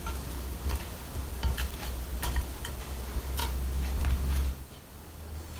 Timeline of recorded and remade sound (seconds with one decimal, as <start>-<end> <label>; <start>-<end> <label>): 0.0-5.6 remade